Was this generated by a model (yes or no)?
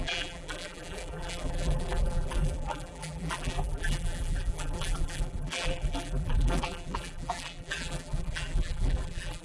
yes